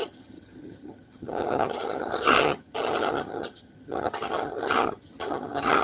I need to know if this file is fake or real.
fake